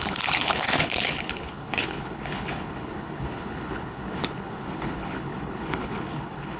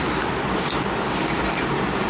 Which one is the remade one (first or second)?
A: first